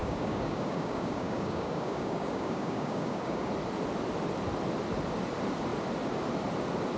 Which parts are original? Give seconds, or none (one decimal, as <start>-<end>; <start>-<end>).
3.5-7.0